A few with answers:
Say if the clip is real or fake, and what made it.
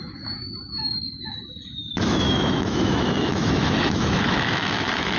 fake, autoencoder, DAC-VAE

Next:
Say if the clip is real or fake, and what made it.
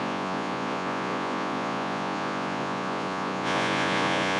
fake, vocoder, Vocos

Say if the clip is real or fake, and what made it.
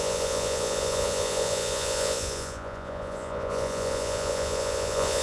fake, vocoder, Vocos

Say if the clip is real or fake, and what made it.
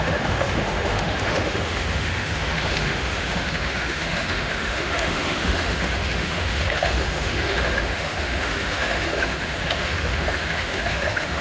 fake, autoencoder, DAC-VAE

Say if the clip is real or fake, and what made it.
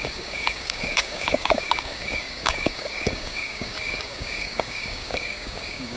fake, codec, DAC